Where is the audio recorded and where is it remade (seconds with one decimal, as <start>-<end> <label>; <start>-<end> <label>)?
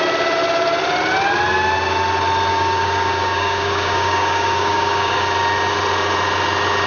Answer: 0.0-2.5 recorded; 2.5-5.2 remade; 5.2-6.9 recorded